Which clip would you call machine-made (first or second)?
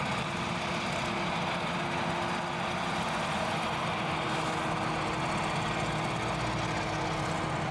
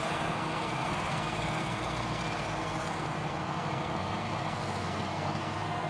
second